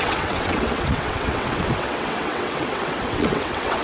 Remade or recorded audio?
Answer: remade